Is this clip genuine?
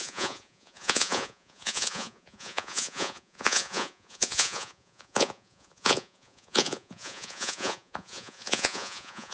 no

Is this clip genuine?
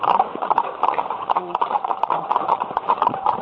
no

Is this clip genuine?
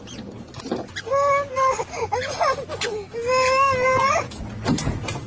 yes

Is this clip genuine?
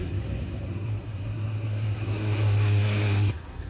no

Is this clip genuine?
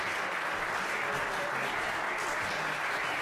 yes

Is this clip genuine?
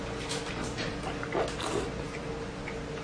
yes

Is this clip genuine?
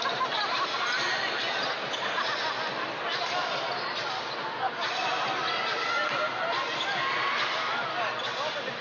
yes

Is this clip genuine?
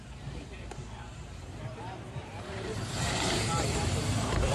no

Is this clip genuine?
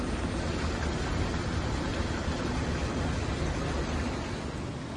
yes